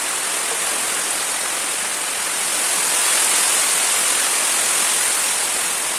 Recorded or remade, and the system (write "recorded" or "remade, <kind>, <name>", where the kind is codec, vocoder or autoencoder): recorded